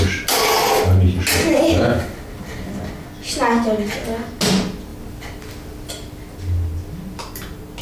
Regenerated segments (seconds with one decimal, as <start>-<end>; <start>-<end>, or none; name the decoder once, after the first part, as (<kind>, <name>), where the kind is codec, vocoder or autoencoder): none